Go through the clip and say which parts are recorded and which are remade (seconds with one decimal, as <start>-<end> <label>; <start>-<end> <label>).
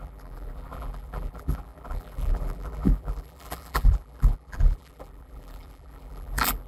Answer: 0.0-6.7 remade